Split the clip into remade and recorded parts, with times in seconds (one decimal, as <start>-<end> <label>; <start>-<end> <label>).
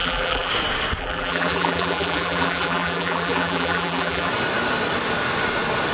0.0-0.5 remade; 0.5-1.0 recorded; 1.0-4.3 remade; 4.3-5.9 recorded